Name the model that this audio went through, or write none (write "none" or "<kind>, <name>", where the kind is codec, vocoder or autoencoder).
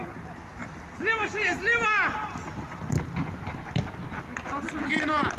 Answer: none